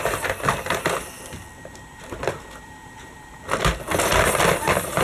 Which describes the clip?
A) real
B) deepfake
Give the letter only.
A